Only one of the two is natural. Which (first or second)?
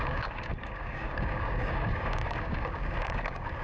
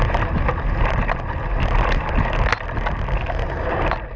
second